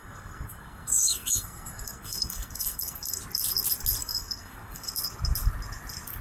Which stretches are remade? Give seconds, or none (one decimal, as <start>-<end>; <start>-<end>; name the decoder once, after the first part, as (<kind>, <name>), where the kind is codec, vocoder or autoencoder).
0.0-3.2 (codec, SNAC); 4.0-4.9